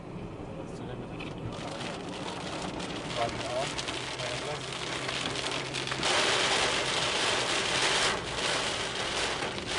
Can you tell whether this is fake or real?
real